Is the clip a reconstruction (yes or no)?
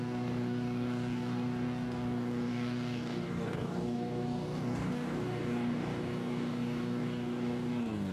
yes